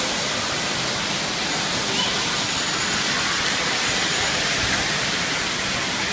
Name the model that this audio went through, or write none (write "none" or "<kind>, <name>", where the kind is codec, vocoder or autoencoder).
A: none